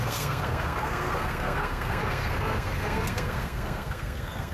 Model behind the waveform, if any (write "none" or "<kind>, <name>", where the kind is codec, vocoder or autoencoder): codec, SNAC